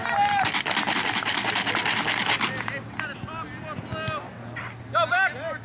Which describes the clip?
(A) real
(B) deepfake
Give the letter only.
A